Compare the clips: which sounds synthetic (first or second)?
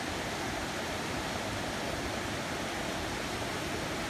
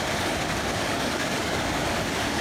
second